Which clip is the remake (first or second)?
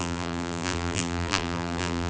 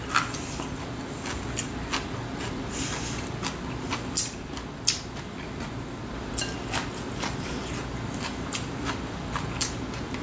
first